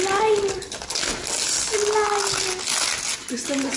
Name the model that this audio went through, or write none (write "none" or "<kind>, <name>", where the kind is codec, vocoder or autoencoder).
none